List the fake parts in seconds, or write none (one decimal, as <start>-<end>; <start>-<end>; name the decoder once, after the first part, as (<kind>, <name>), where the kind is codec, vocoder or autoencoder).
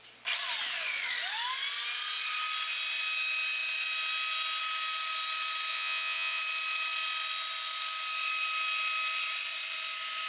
5.7-6.4 (vocoder, Vocos)